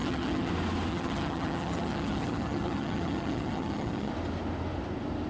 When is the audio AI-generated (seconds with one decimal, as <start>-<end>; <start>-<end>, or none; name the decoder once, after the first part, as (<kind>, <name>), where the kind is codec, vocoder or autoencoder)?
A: 0.0-0.5 (vocoder, HiFi-GAN); 0.9-4.1